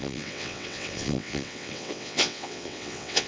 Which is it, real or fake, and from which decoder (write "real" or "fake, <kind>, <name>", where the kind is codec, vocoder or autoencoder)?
fake, vocoder, WaveNeXt